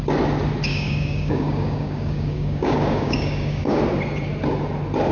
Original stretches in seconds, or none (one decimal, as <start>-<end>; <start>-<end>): 0.0-0.7; 3.8-5.1